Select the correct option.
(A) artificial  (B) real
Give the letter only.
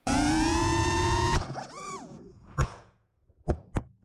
A